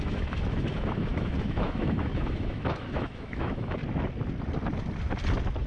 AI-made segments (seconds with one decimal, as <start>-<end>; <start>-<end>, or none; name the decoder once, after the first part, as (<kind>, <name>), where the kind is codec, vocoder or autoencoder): 0.0-3.8 (autoencoder, DAC-VAE)